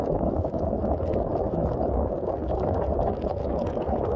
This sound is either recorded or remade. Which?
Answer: remade